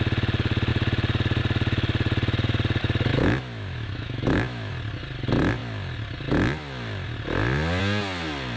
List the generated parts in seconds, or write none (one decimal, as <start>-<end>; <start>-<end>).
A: 3.1-4.7